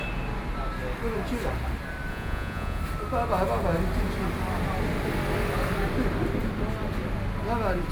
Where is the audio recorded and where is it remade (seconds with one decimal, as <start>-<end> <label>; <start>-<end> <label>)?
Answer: 0.0-2.1 recorded; 2.1-2.8 remade; 2.8-7.9 recorded